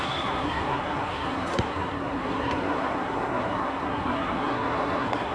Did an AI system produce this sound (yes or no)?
yes